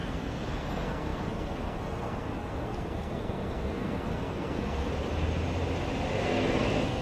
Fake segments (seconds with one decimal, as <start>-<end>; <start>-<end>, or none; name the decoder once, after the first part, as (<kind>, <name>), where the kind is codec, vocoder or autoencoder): 0.0-4.9 (codec, SNAC); 6.2-7.0